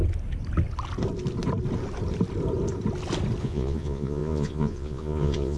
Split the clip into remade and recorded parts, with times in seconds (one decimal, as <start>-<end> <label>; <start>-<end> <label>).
0.0-3.4 recorded; 3.4-5.6 remade